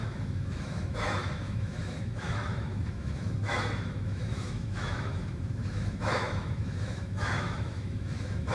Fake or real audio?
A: fake